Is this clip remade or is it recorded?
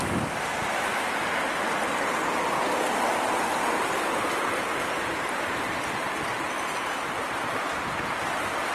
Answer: recorded